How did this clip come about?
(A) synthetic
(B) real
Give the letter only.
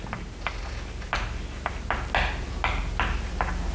B